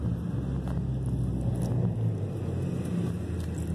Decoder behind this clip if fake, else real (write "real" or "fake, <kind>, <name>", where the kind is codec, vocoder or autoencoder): real